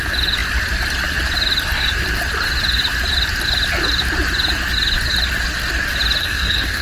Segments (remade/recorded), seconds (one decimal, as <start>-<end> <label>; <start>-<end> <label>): 0.0-6.2 recorded; 6.2-6.8 remade